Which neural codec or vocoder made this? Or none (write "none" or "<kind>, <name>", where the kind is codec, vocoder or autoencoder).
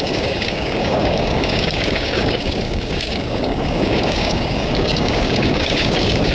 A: codec, DAC